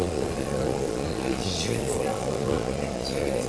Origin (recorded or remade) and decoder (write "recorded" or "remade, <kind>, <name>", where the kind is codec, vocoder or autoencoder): remade, vocoder, Vocos